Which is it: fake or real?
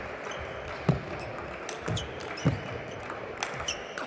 real